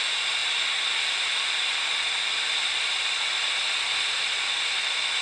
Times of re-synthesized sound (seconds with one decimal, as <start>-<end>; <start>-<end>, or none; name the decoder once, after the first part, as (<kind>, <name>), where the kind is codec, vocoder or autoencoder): 0.4-3.5 (vocoder, BigVGAN v2)